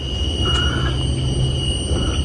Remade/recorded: recorded